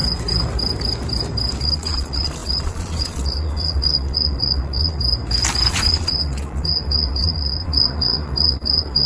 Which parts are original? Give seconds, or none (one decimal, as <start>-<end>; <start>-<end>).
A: 0.0-1.6; 5.0-5.7